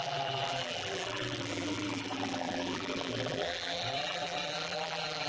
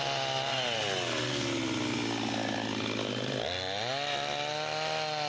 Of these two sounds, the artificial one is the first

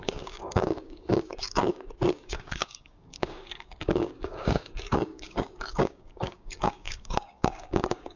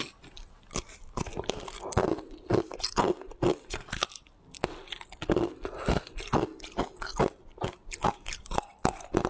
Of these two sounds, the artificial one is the first